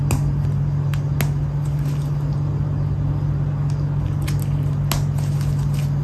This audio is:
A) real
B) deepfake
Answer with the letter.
A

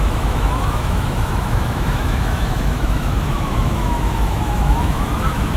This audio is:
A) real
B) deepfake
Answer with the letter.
B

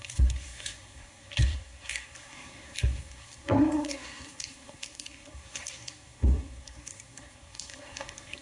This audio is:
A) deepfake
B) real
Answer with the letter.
A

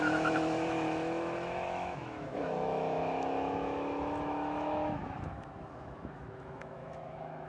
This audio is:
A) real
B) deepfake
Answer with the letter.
B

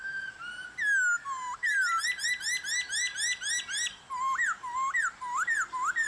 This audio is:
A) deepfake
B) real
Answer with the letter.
B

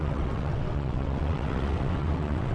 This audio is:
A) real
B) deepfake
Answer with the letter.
B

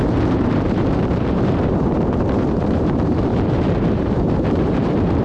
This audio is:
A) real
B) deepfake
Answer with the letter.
B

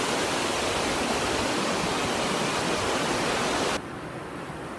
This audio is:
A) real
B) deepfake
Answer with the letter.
A